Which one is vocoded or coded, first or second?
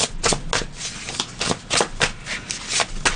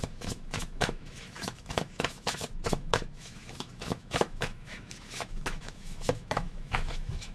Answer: second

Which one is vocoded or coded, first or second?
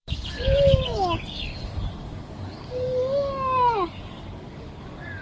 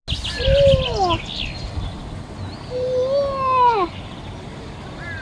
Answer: first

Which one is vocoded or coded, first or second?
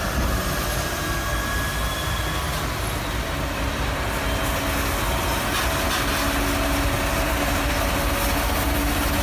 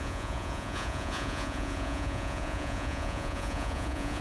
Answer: second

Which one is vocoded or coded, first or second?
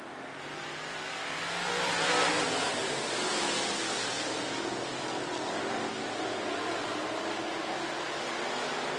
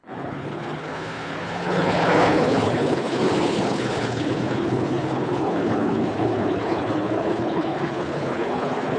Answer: second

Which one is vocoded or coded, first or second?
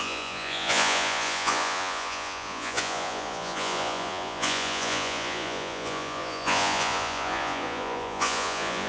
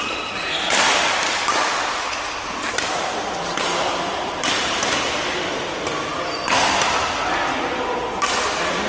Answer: first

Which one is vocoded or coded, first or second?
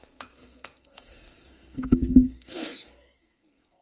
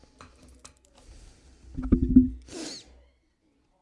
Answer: first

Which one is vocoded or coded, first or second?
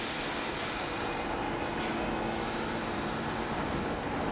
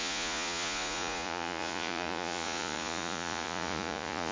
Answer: second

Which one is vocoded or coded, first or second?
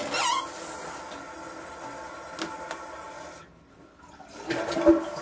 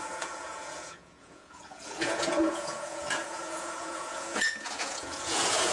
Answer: second